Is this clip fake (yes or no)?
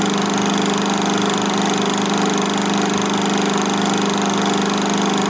no